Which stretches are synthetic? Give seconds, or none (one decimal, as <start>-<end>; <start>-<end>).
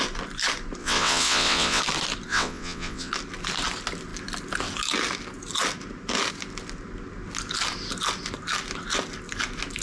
0.8-1.8; 2.3-3.1